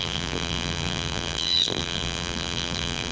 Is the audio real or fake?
fake